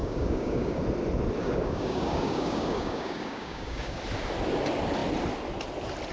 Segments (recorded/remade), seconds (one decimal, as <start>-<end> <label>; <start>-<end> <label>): 0.0-0.8 remade; 0.8-1.4 recorded; 1.4-4.0 remade; 4.0-6.1 recorded

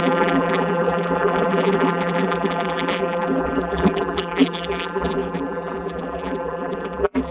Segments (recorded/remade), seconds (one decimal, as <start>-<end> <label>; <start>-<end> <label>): 0.0-7.3 remade